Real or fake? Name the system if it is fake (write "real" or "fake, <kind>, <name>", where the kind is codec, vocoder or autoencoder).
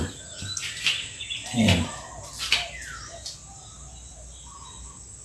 real